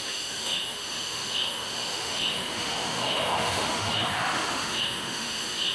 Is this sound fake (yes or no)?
yes